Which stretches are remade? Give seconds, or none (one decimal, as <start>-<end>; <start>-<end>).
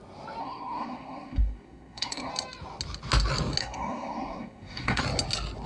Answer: 0.4-2.3; 3.6-5.0